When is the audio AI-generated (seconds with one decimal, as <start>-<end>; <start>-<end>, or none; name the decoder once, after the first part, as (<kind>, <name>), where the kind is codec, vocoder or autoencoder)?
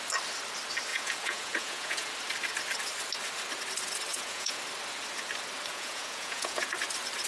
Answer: 0.9-2.1 (vocoder, Vocos); 4.1-4.6; 5.7-6.7